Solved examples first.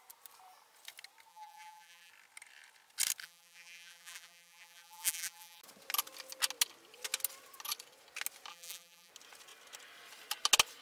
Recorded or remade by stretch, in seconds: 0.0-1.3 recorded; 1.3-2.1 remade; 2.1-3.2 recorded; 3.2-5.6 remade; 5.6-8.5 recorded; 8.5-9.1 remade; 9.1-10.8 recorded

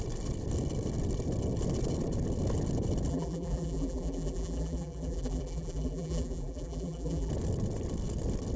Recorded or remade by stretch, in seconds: 0.0-3.1 recorded; 3.1-7.3 remade; 7.3-8.6 recorded

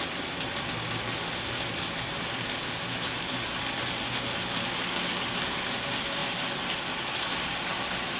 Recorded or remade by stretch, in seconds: 0.0-8.2 recorded

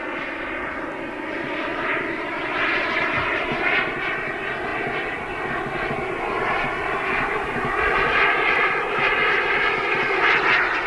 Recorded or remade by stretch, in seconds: 0.0-1.7 recorded; 1.7-3.6 remade; 3.6-10.9 recorded

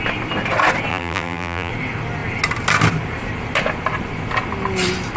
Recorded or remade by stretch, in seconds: 0.0-0.9 recorded; 0.9-1.7 remade; 1.7-5.2 recorded

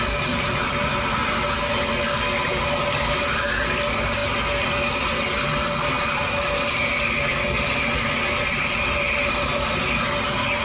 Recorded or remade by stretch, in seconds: 0.0-10.6 recorded

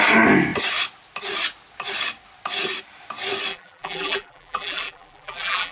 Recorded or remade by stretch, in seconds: 0.0-3.5 recorded; 3.5-5.7 remade